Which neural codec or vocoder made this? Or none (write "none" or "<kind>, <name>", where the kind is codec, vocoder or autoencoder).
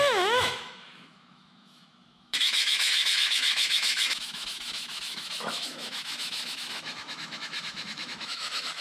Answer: autoencoder, DAC-VAE